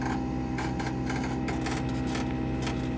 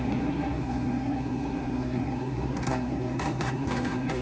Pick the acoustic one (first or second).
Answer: first